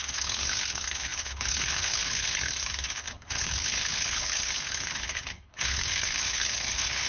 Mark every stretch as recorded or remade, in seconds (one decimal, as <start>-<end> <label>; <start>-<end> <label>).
0.0-7.1 remade